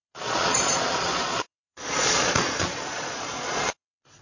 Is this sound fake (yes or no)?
yes